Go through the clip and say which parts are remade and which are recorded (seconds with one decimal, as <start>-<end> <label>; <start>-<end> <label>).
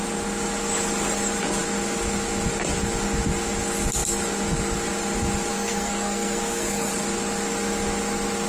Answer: 0.0-5.5 recorded; 5.5-6.9 remade; 6.9-8.5 recorded